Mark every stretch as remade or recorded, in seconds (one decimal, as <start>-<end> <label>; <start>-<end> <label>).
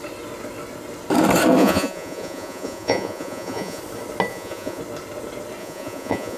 0.0-1.6 recorded; 1.6-3.8 remade; 3.8-4.3 recorded; 4.3-4.8 remade; 4.8-5.6 recorded; 5.6-6.4 remade